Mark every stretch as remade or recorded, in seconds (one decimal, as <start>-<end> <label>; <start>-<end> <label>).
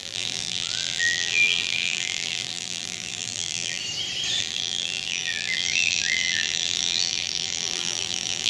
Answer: 0.0-3.8 remade; 3.8-4.4 recorded; 4.4-8.5 remade